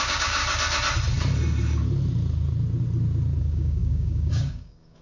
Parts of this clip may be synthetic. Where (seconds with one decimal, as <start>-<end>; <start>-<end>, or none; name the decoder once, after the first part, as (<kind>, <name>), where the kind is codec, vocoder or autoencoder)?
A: 0.0-0.4 (codec, DAC); 3.4-5.0